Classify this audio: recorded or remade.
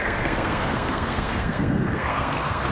remade